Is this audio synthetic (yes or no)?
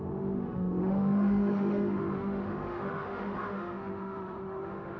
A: yes